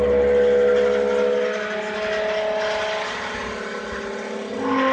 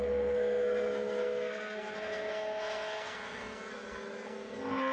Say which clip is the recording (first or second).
first